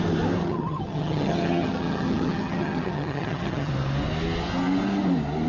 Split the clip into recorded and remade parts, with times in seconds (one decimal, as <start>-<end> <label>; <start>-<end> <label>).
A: 0.0-0.4 recorded; 0.4-3.7 remade; 3.7-5.5 recorded